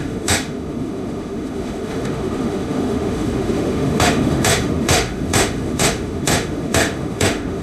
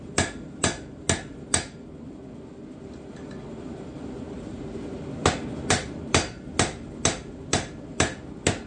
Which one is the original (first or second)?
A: second